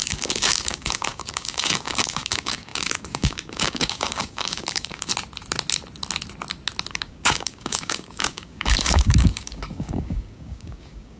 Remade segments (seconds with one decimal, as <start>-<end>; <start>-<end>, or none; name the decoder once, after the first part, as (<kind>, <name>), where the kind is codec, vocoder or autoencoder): 0.0-5.1 (codec, DAC); 6.9-11.2